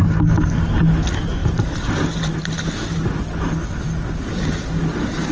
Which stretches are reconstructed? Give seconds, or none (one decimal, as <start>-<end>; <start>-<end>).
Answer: none